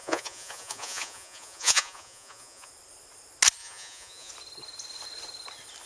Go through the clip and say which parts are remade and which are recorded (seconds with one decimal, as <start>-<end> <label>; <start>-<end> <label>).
0.0-2.7 remade; 2.7-3.6 recorded; 3.6-4.3 remade; 4.3-5.9 recorded